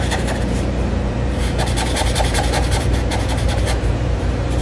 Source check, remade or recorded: remade